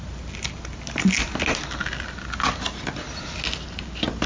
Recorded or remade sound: recorded